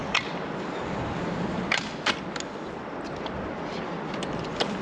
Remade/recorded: recorded